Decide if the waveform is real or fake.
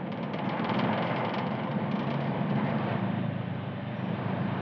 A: fake